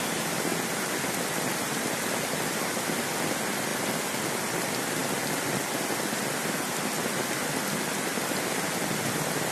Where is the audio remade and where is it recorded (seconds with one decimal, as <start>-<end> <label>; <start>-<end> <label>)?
0.0-9.5 recorded